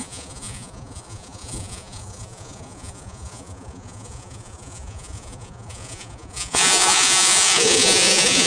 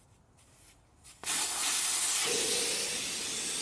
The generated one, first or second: first